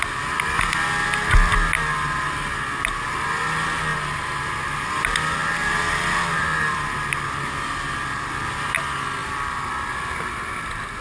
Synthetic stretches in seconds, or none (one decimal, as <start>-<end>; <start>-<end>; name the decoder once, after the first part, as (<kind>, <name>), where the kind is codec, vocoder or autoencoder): 3.9-4.6 (vocoder, BigVGAN v2)